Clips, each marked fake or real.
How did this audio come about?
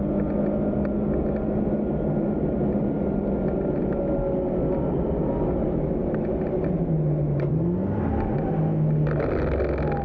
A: real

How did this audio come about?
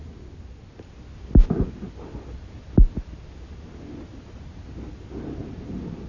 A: real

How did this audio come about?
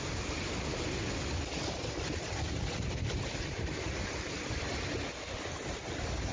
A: real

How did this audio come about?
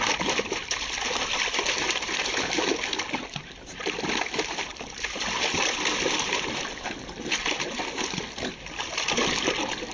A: real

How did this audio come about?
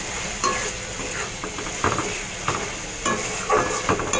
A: real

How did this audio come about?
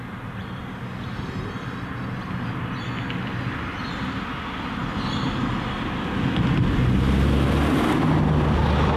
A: real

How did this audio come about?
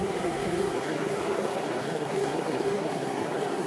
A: fake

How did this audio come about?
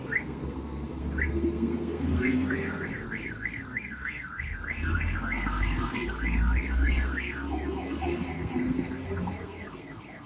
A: fake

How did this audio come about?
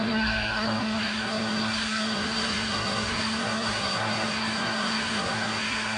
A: fake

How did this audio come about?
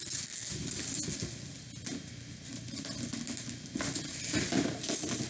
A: real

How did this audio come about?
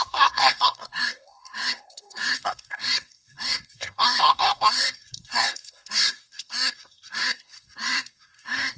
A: fake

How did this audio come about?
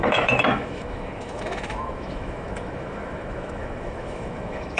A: fake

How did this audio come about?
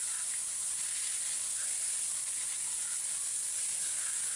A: real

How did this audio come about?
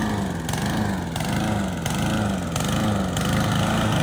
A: real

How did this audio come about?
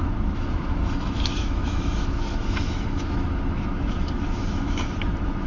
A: fake